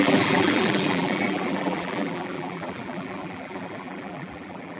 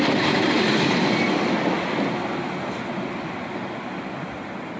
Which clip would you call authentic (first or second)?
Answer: second